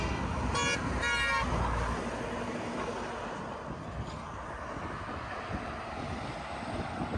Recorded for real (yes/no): yes